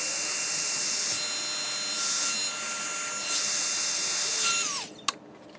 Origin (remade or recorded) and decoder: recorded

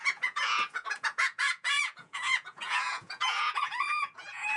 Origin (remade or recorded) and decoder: remade, vocoder, Vocos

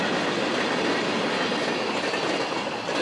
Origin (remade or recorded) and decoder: recorded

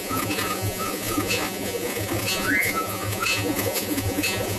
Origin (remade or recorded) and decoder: remade, vocoder, Vocos